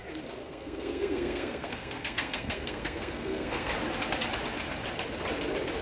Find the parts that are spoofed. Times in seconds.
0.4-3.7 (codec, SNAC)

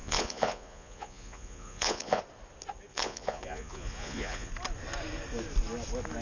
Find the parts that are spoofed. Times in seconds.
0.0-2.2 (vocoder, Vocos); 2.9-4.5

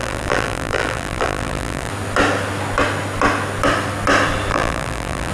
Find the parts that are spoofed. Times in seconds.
0.0-1.9 (vocoder, BigVGAN v2); 4.5-5.3